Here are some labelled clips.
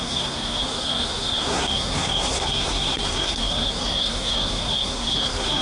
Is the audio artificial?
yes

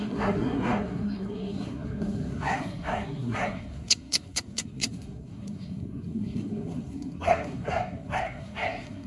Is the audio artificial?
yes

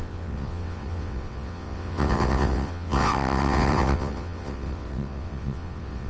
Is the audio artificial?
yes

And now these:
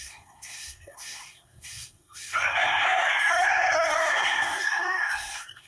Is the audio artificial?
yes